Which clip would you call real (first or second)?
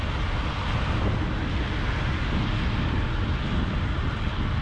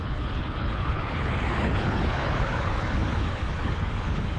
first